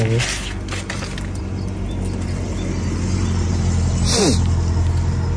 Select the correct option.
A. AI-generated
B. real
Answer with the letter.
B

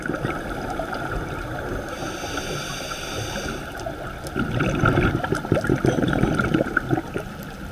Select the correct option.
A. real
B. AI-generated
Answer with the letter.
A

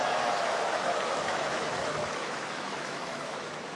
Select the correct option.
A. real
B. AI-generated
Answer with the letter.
B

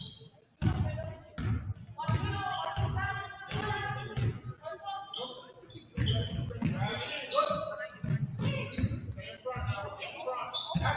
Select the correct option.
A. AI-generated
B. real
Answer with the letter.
B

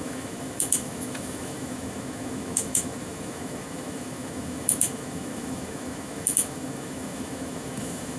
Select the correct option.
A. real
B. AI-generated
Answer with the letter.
B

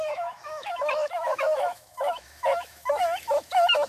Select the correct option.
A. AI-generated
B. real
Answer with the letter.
A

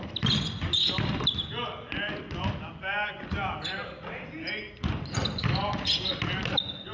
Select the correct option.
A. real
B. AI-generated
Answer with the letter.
A